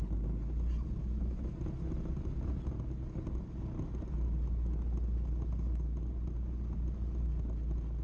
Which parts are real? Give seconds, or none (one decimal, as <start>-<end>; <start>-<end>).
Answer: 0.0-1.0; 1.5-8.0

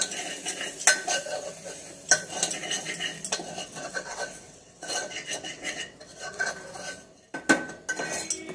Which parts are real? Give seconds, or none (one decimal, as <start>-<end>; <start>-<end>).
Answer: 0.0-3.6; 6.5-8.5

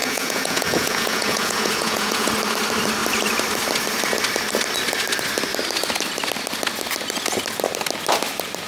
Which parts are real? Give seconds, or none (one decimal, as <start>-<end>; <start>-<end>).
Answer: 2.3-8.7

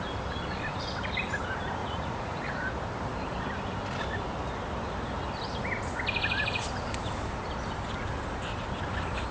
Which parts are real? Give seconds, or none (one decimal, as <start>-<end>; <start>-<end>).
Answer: 0.0-1.8; 2.5-9.3